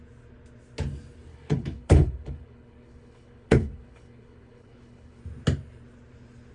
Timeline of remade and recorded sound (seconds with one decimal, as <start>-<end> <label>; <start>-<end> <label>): 0.0-1.3 recorded; 1.3-5.2 remade; 5.2-6.5 recorded